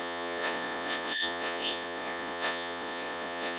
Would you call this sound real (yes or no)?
no